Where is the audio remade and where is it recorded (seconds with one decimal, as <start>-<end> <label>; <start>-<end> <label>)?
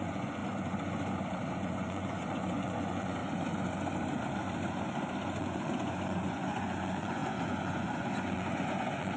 0.0-0.4 remade; 0.4-1.5 recorded; 1.5-3.2 remade; 3.2-5.4 recorded; 5.4-9.2 remade